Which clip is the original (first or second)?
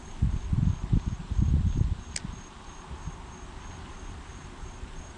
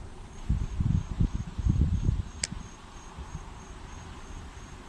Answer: first